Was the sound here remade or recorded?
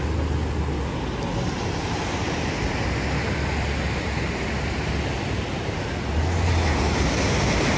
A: recorded